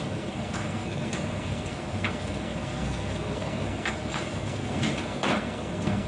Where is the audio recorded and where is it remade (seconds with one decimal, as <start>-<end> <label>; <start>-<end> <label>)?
0.0-6.1 remade